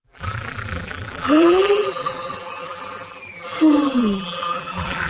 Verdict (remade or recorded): remade